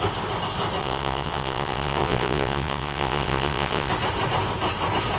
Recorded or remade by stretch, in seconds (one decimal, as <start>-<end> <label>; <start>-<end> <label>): 0.0-0.8 recorded; 0.8-3.9 remade; 3.9-5.2 recorded